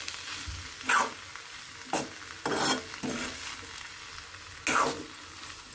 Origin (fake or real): real